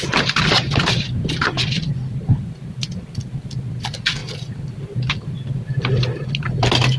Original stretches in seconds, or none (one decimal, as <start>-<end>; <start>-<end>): 0.0-7.0

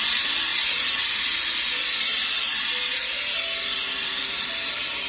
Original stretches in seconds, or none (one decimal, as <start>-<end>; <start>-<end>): 0.0-5.1

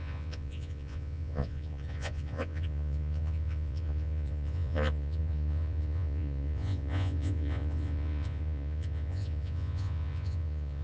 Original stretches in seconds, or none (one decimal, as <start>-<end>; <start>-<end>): none

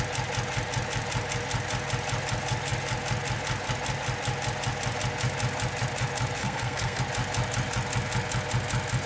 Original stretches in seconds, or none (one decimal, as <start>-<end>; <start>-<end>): 0.0-6.4; 7.0-9.1